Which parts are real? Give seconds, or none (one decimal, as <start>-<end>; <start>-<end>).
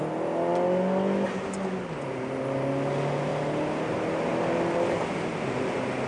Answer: 0.0-6.1